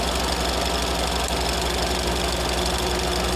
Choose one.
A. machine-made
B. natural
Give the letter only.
B